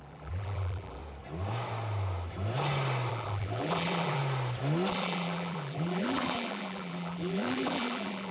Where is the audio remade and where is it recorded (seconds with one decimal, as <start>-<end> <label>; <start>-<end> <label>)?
0.0-1.0 remade; 1.0-3.1 recorded; 3.1-4.2 remade; 4.2-4.9 recorded; 4.9-8.3 remade